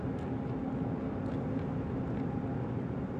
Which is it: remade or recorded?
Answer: recorded